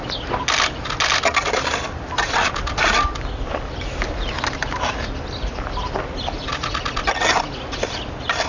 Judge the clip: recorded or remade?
recorded